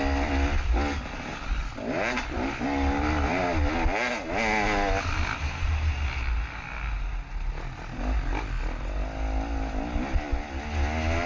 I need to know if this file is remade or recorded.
recorded